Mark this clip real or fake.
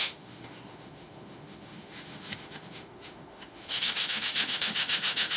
fake